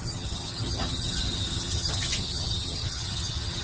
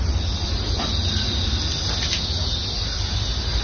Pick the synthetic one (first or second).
first